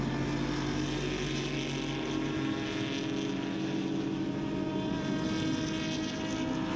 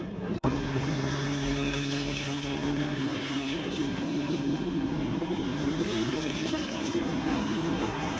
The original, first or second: first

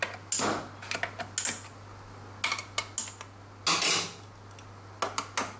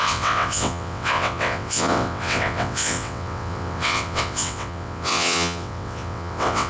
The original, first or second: first